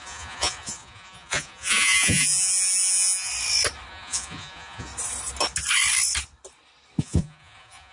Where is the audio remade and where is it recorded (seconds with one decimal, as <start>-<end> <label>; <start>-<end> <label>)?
0.0-3.3 remade; 3.3-3.9 recorded; 3.9-4.9 remade; 4.9-7.0 recorded; 7.0-7.9 remade